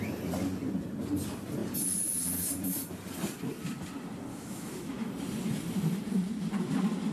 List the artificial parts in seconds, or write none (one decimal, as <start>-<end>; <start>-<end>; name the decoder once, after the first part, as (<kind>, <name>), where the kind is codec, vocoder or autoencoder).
4.3-5.1 (autoencoder, DAC-VAE)